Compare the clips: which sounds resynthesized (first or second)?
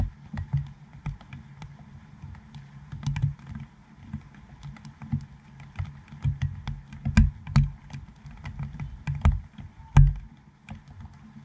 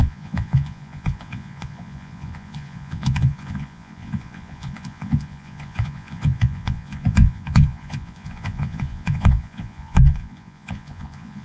second